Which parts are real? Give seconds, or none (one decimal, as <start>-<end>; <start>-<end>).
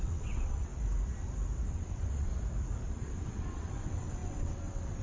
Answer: 0.7-1.7; 2.3-2.8